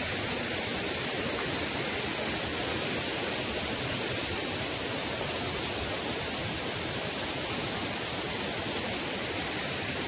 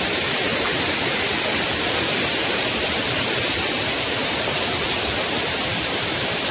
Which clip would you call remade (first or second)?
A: second